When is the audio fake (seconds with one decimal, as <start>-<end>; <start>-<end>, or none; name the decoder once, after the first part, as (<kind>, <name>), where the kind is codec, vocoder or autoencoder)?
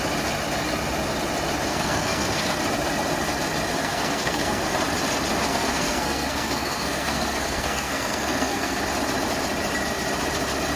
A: 1.7-2.6 (codec, SNAC); 3.8-4.6; 5.5-8.8